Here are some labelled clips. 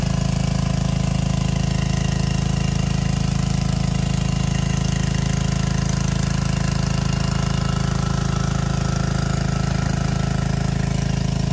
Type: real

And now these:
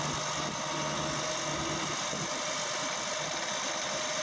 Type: real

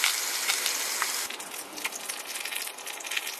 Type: real